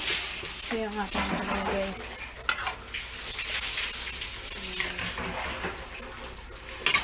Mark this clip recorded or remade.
recorded